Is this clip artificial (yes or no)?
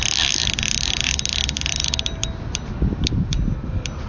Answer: no